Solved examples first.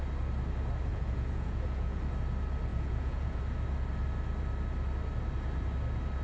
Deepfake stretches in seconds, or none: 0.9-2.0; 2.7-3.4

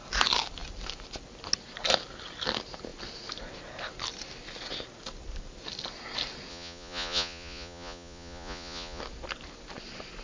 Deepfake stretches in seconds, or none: 6.5-9.0

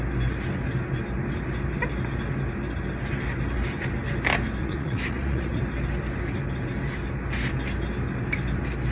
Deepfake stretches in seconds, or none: 4.6-5.6